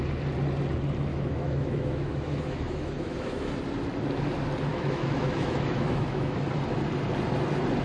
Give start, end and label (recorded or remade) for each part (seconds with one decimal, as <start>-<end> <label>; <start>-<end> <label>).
0.0-1.1 recorded; 1.1-3.5 remade; 3.5-4.7 recorded; 4.7-6.4 remade; 6.4-7.8 recorded